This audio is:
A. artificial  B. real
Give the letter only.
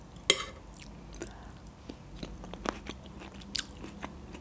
B